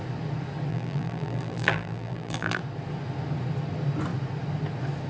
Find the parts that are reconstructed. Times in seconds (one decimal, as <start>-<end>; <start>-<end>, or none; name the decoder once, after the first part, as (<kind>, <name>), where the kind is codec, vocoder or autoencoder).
0.7-2.6 (vocoder, BigVGAN v2)